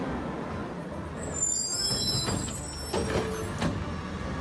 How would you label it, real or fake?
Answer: real